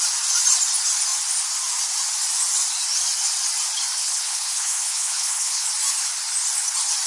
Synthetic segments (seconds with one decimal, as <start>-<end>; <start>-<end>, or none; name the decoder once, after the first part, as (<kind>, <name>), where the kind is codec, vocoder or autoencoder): 4.0-5.7 (codec, HILCodec)